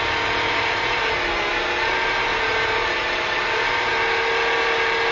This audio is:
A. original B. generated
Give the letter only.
A